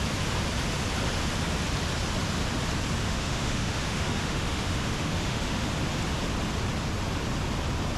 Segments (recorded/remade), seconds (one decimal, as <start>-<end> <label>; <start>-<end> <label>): 0.0-3.0 recorded; 3.0-5.7 remade; 5.7-8.0 recorded